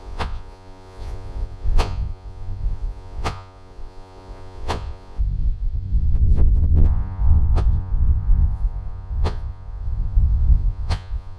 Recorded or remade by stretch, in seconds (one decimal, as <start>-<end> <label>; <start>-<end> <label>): 0.0-11.4 remade